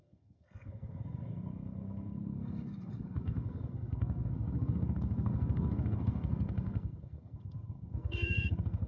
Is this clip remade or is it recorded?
remade